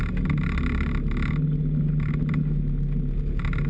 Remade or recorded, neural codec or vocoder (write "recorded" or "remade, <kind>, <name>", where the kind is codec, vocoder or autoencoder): recorded